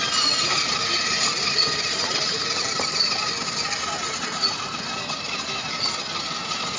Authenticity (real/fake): real